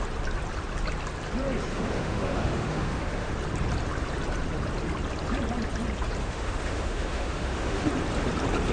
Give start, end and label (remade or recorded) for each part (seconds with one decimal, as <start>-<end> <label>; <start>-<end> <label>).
0.0-1.7 recorded; 1.7-3.3 remade; 3.3-6.2 recorded; 6.2-7.9 remade; 7.9-8.7 recorded